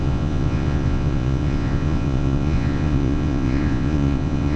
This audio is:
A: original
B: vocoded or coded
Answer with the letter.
B